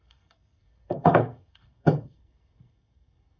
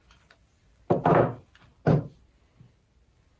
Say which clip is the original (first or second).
second